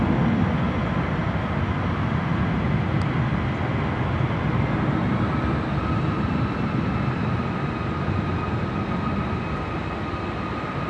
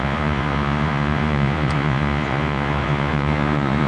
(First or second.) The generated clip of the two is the second